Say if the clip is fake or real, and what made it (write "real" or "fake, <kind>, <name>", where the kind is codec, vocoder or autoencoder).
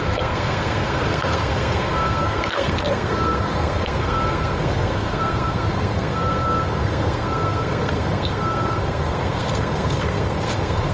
fake, codec, SNAC